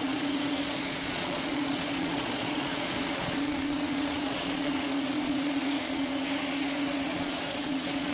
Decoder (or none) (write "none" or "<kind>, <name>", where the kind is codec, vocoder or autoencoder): vocoder, Vocos